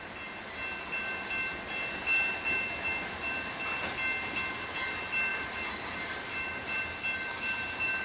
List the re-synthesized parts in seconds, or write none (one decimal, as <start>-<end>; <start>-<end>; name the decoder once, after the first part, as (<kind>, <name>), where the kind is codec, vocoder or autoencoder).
5.3-6.8 (vocoder, BigVGAN v2)